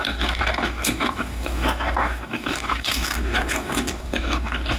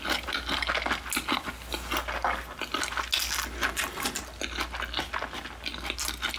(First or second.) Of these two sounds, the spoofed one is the first